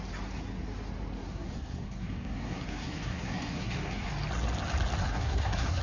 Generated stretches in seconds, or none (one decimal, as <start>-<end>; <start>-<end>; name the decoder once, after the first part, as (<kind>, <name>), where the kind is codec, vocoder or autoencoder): 1.2-4.1 (codec, SNAC); 5.0-5.8